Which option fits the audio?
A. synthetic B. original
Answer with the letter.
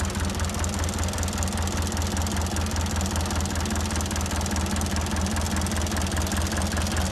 B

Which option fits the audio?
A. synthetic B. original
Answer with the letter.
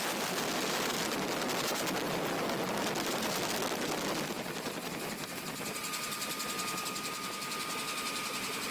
B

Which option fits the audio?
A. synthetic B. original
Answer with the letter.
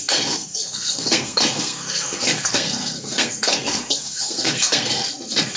A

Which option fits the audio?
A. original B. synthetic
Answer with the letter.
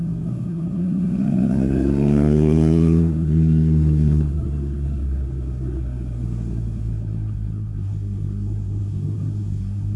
B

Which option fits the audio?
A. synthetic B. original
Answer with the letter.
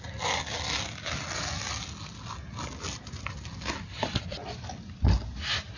B